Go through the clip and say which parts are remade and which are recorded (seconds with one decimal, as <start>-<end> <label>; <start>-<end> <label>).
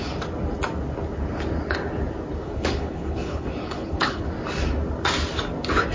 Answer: 0.0-2.4 recorded; 2.4-4.3 remade; 4.3-5.9 recorded